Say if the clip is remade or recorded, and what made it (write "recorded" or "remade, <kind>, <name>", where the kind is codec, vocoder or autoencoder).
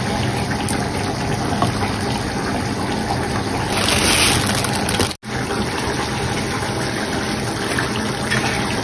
recorded